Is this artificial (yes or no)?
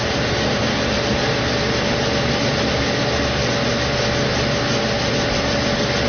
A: no